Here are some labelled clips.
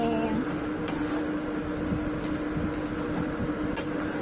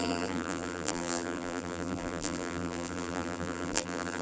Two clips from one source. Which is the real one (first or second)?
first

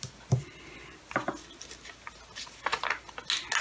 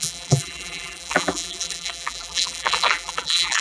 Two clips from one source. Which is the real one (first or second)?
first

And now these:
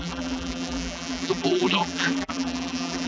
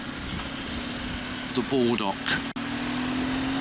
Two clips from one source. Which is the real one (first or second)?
second